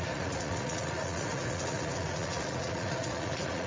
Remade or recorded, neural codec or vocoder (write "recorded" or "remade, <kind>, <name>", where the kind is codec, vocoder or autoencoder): remade, vocoder, Vocos